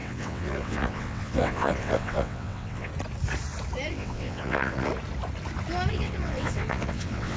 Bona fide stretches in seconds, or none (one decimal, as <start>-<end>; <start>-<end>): 2.9-3.9; 4.9-5.9